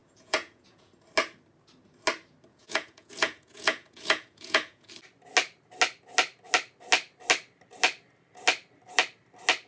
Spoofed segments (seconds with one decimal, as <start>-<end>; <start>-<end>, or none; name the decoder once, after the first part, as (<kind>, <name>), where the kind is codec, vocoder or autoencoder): 0.0-0.9 (vocoder, Vocos); 2.5-4.9